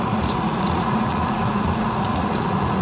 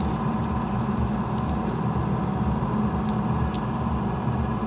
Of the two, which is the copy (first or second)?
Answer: first